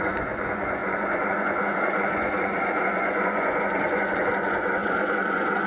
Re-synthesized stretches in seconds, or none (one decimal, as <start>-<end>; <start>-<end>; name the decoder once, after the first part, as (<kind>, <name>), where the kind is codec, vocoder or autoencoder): 0.0-5.7 (vocoder, Vocos)